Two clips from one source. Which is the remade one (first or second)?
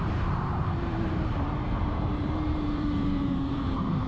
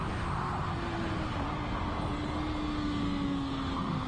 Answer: first